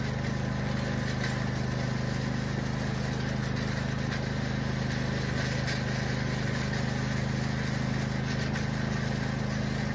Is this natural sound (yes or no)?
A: yes